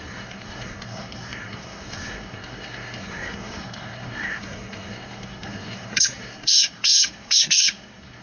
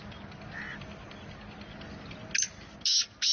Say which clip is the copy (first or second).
first